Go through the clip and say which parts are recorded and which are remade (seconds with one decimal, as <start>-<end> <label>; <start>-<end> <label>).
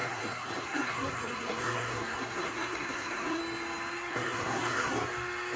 0.0-3.4 remade; 3.4-4.1 recorded; 4.1-4.9 remade; 4.9-5.6 recorded